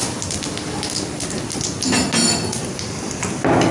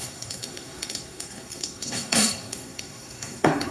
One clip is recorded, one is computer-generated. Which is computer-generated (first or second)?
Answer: second